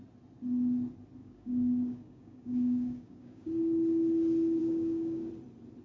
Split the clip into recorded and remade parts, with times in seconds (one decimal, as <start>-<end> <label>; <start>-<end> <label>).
0.0-1.2 recorded; 1.2-3.5 remade; 3.5-4.6 recorded; 4.6-5.3 remade; 5.3-5.8 recorded